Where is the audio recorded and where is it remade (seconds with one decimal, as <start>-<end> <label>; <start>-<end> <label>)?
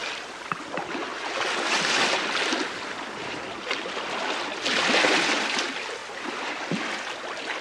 0.0-7.6 recorded